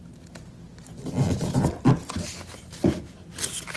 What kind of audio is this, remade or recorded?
recorded